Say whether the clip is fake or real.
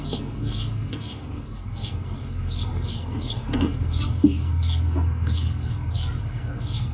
fake